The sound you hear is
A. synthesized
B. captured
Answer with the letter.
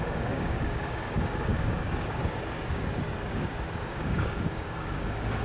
A